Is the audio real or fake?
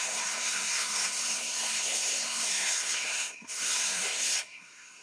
fake